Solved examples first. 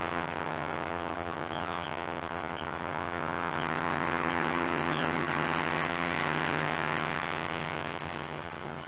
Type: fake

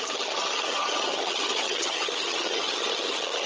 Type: fake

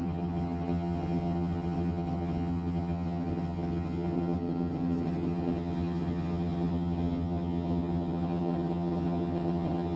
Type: fake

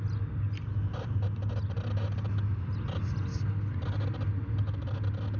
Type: real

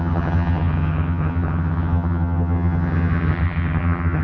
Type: fake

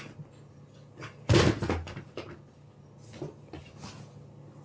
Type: real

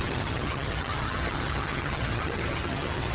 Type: fake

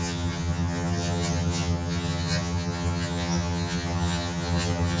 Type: fake